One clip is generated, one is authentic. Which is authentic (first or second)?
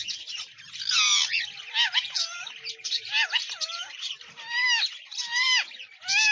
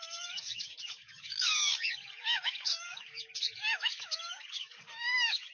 first